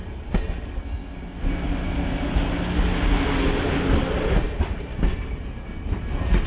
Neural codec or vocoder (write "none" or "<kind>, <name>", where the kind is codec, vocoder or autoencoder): none